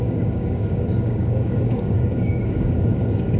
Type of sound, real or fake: fake